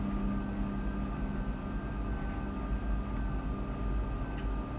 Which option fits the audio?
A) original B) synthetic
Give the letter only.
A